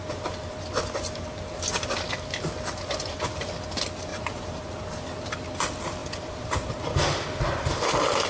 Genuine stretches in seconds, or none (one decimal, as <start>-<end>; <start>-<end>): 0.0-4.1; 4.6-6.0; 6.7-8.3